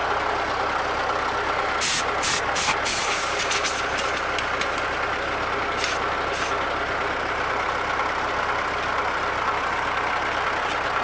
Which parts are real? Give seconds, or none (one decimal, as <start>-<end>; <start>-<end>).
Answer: 0.0-11.0

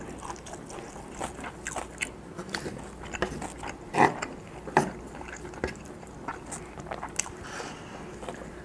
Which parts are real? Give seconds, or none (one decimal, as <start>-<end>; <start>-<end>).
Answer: 0.0-8.6

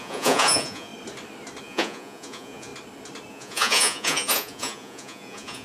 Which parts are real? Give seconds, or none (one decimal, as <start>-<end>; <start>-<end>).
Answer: 0.9-1.6; 2.7-3.3

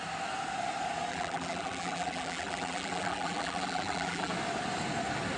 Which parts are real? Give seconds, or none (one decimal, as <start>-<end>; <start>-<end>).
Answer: 0.0-1.1; 4.3-5.4

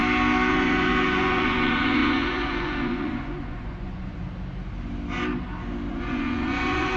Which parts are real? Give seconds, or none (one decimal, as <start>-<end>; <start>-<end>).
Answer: 0.0-0.5; 4.2-5.9

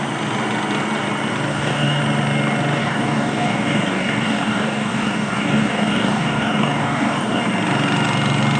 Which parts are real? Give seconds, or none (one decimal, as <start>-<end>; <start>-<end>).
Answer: 0.0-1.5; 2.0-2.8; 7.4-8.6